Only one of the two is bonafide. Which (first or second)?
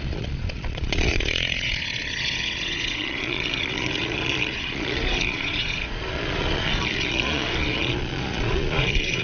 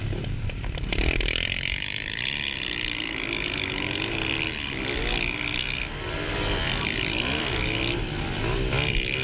second